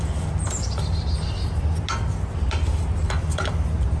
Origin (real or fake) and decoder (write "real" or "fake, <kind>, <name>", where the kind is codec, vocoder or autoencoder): real